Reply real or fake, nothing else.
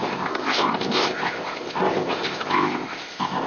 fake